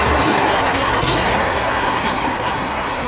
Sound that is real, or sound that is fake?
fake